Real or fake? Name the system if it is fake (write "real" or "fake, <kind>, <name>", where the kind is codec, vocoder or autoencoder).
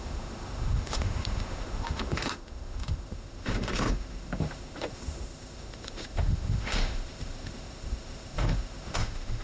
fake, autoencoder, DAC-VAE